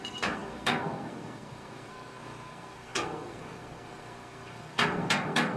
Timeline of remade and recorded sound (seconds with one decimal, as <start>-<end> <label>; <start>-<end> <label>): 0.0-5.6 remade